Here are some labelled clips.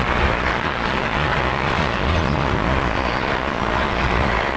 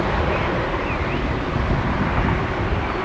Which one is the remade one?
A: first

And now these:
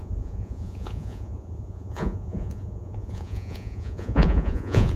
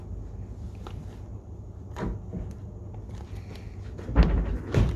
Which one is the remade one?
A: first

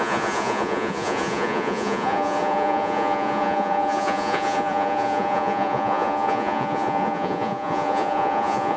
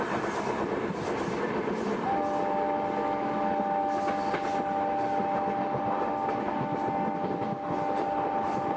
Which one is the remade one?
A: first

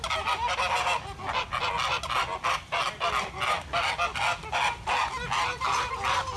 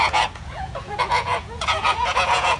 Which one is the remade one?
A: second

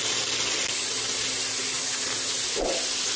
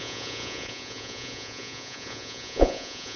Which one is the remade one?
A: second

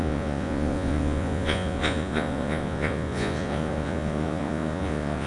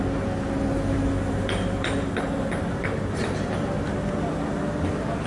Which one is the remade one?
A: first